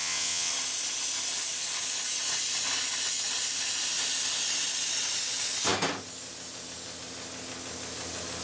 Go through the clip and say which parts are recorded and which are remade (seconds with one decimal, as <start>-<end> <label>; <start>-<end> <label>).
0.0-0.5 remade; 0.5-8.4 recorded

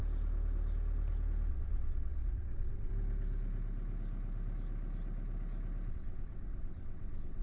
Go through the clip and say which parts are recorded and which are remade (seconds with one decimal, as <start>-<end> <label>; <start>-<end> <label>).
0.0-1.5 recorded; 1.5-2.9 remade; 2.9-5.9 recorded; 5.9-7.4 remade

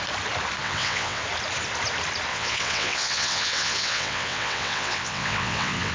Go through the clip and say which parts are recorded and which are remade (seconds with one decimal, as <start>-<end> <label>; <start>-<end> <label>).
0.0-0.6 recorded; 0.6-1.2 remade; 1.2-2.3 recorded; 2.3-5.9 remade

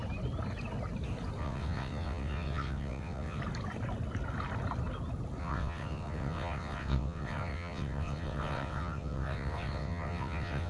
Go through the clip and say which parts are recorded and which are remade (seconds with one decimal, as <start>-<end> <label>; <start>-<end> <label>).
0.0-1.4 recorded; 1.4-3.4 remade; 3.4-5.4 recorded; 5.4-10.7 remade

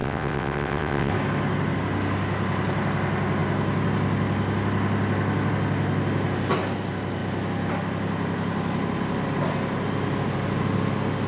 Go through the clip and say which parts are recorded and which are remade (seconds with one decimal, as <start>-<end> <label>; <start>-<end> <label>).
0.0-1.1 remade; 1.1-11.3 recorded

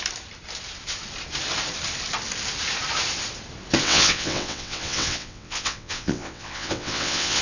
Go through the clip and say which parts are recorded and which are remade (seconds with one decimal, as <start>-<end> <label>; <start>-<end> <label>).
0.0-3.8 recorded; 3.8-7.4 remade